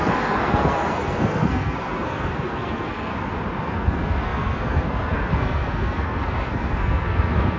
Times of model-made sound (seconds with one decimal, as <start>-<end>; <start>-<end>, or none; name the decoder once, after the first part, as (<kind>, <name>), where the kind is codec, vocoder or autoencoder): 0.0-3.1 (codec, SNAC); 3.6-7.6

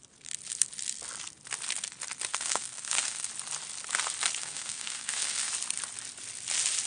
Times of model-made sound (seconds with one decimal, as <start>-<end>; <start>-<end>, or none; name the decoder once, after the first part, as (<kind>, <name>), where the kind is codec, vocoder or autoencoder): 2.3-3.3 (codec, SNAC); 4.4-5.5

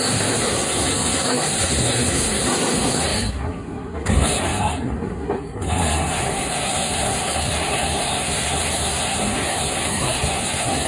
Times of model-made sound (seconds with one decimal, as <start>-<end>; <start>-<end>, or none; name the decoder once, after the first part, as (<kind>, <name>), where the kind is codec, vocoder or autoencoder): 0.0-10.9 (codec, SNAC)